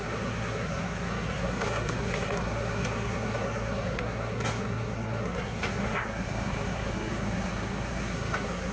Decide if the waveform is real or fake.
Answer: fake